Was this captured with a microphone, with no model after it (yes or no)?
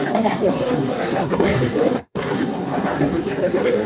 no